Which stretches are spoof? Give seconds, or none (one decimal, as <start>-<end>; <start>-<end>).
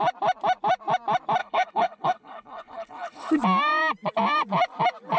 1.4-3.3